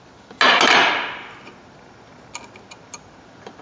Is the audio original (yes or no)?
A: yes